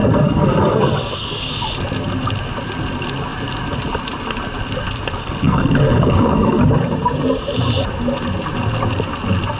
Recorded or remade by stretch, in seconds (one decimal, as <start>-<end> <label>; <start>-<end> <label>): 0.0-1.5 remade; 1.5-5.2 recorded; 5.2-6.6 remade; 6.6-9.6 recorded